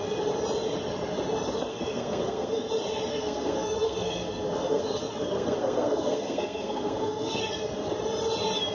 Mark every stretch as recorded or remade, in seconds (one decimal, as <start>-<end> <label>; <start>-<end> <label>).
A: 0.0-1.7 recorded; 1.7-2.7 remade; 2.7-3.1 recorded; 3.1-7.4 remade; 7.4-8.7 recorded